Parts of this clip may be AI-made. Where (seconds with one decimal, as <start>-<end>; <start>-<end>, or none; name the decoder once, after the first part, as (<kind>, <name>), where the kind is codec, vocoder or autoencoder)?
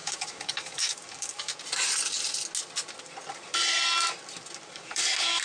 0.0-1.5 (codec, DAC); 4.7-5.4